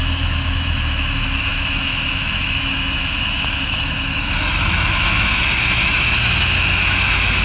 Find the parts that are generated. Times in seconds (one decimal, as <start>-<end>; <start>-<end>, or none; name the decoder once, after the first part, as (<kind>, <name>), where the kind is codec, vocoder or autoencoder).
0.0-7.4 (autoencoder, DAC-VAE)